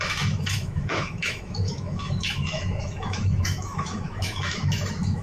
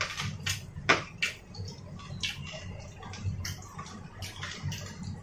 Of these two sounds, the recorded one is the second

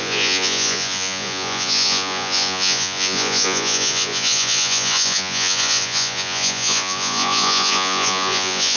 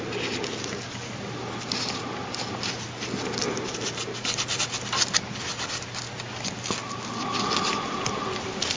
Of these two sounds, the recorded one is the second